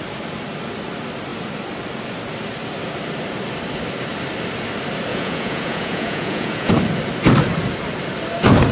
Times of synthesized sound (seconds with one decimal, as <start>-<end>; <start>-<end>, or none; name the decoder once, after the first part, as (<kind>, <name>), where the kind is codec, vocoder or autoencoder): 5.1-6.7 (vocoder, Vocos)